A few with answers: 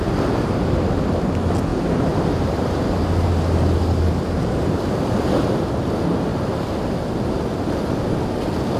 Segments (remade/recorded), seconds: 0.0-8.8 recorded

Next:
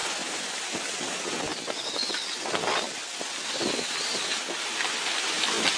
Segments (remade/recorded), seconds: 0.0-5.8 remade

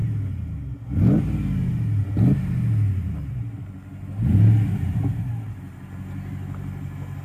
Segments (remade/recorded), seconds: 0.0-7.2 recorded

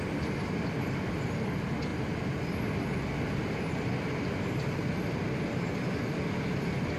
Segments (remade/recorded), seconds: 0.0-7.0 recorded

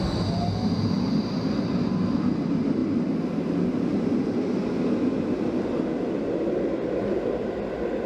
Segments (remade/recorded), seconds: 0.0-8.1 recorded

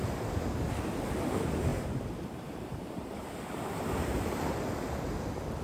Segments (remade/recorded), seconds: 0.0-1.7 recorded; 1.7-5.1 remade; 5.1-5.6 recorded

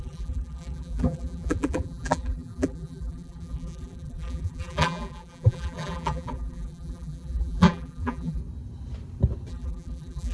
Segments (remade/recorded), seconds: 0.0-8.4 remade; 8.4-9.5 recorded; 9.5-10.3 remade